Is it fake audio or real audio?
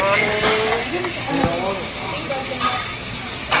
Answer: real